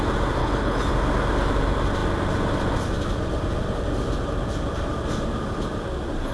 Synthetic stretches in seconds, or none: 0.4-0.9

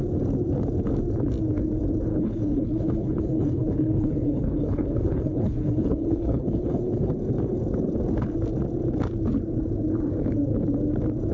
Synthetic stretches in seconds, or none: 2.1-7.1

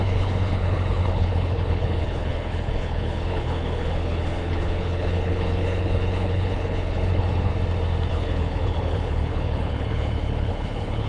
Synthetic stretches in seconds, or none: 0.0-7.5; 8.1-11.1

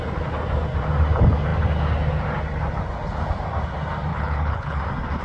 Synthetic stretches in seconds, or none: 4.1-4.8

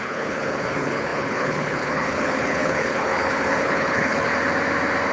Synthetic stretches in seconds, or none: 0.0-4.3